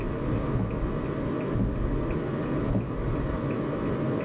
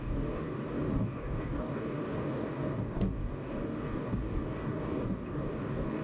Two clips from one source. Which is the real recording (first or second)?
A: first